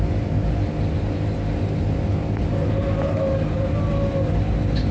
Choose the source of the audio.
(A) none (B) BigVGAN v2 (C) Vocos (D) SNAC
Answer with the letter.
A